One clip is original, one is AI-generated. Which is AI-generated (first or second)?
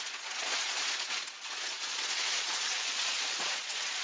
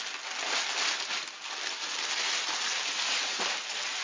first